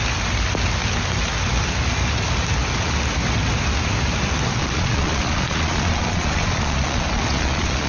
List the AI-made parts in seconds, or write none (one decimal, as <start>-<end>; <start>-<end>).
4.6-7.9

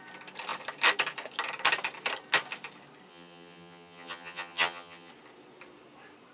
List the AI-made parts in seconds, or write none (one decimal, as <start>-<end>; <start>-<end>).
3.1-5.1

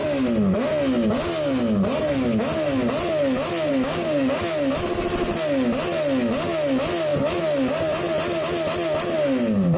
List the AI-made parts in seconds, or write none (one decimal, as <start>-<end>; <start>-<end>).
3.7-4.4

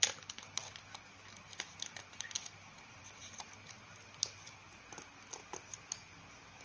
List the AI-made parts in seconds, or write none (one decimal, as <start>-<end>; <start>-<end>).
none

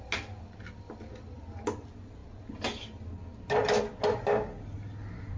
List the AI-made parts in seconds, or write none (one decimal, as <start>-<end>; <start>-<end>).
none

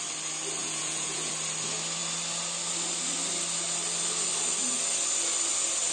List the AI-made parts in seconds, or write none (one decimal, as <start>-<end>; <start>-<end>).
0.6-1.3